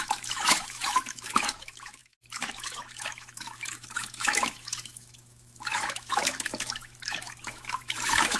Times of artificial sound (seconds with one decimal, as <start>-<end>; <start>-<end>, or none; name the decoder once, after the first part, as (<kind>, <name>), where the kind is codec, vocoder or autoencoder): 0.0-8.4 (autoencoder, DAC-VAE)